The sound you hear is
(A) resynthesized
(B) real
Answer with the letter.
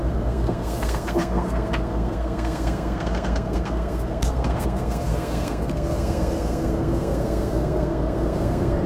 A